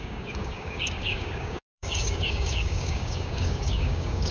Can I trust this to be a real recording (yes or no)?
no